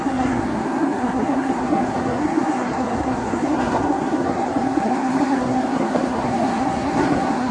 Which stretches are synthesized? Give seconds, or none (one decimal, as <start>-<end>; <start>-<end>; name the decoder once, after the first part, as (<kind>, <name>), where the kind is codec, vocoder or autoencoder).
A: 0.0-7.5 (codec, SNAC)